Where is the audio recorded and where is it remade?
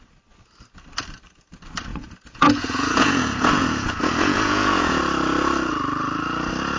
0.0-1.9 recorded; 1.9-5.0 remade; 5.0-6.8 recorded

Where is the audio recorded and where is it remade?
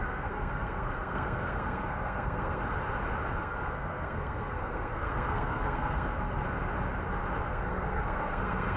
0.0-2.6 remade; 2.6-3.4 recorded; 3.4-6.4 remade; 6.4-7.4 recorded; 7.4-8.8 remade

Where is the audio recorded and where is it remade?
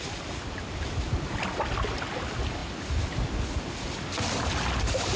0.0-5.2 recorded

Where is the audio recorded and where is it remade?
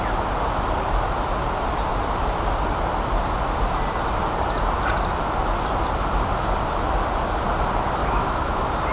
0.0-8.0 recorded; 8.0-8.5 remade; 8.5-8.9 recorded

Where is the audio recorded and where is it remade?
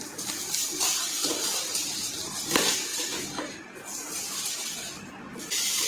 0.0-0.6 recorded; 0.6-1.2 remade; 1.2-2.9 recorded; 2.9-3.7 remade; 3.7-5.9 recorded